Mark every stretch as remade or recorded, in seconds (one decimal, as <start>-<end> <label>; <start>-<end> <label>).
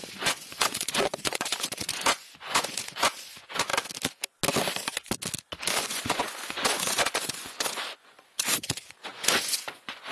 0.0-3.7 remade; 3.7-5.8 recorded; 5.8-10.1 remade